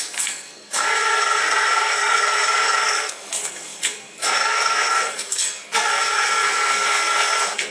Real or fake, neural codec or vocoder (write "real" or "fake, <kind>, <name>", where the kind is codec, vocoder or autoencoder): fake, codec, SNAC